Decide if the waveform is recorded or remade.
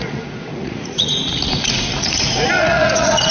remade